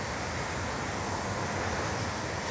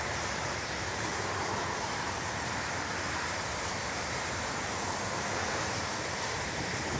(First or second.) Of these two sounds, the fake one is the second